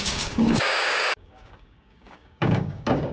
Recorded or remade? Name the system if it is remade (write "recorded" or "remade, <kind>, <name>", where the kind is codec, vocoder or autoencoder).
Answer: remade, codec, DAC